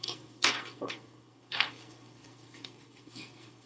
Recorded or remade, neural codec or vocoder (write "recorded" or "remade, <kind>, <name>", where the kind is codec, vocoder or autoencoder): remade, codec, SNAC